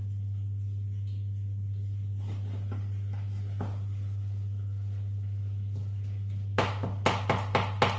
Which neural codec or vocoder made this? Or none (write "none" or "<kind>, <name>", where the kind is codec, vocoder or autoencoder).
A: none